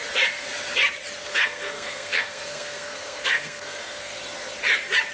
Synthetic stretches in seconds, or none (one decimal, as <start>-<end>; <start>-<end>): 1.2-4.2